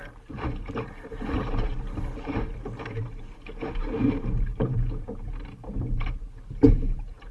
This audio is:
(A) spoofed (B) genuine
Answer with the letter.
A